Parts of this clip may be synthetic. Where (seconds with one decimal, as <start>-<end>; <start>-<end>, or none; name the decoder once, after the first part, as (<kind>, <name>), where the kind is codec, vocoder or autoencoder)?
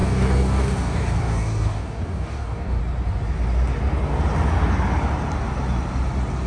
0.0-2.8 (codec, DAC)